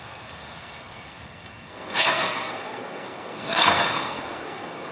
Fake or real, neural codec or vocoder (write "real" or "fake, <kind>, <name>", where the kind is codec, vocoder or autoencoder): fake, codec, SNAC